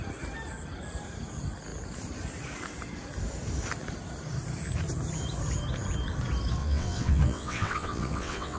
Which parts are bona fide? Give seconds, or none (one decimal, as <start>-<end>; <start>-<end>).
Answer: 0.0-6.6